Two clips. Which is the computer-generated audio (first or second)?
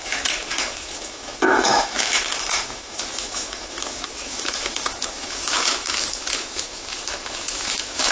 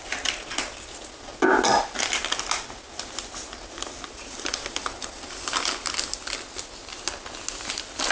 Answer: first